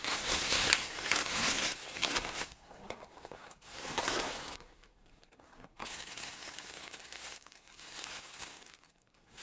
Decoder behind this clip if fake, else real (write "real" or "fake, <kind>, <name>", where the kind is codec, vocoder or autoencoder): fake, codec, SNAC